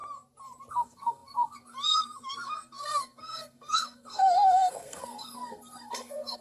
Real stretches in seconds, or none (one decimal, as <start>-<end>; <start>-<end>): 0.0-0.7